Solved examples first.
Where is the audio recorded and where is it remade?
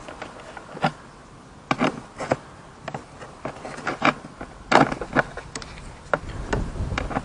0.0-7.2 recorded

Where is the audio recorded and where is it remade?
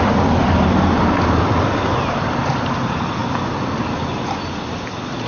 0.0-5.3 recorded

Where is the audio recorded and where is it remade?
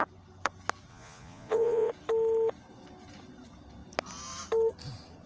0.0-0.9 recorded; 0.9-1.9 remade; 1.9-5.3 recorded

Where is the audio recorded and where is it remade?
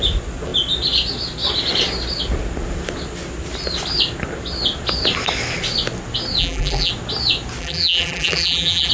0.0-6.4 recorded; 6.4-6.9 remade; 6.9-7.6 recorded; 7.6-8.9 remade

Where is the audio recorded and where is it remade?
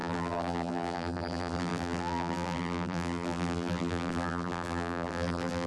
0.0-5.7 remade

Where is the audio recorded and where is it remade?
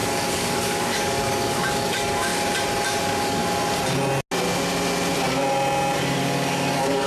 0.0-2.3 remade; 2.3-3.0 recorded; 3.0-3.4 remade; 3.4-6.2 recorded; 6.2-7.1 remade